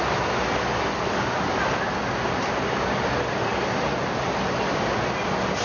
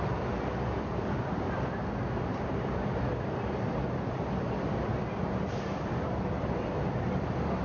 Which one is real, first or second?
first